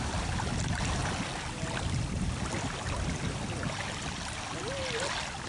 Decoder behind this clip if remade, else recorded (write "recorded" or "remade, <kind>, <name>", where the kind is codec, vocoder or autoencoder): recorded